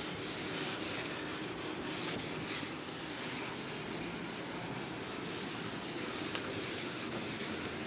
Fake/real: real